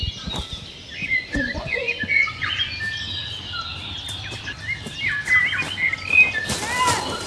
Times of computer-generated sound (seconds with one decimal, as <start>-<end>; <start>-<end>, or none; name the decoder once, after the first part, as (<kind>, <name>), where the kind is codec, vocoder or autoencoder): 1.0-2.7 (vocoder, Vocos)

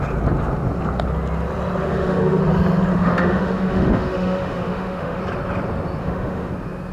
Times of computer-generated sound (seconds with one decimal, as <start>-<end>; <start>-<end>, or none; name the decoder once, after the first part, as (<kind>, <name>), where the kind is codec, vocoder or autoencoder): 1.8-2.4 (autoencoder, DAC-VAE); 2.9-5.2; 6.0-6.5